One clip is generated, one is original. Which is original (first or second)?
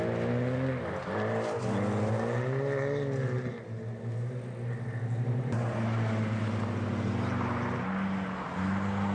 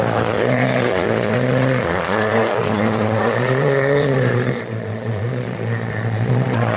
first